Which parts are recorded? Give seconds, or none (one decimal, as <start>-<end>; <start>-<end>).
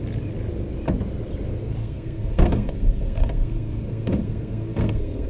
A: 0.0-1.8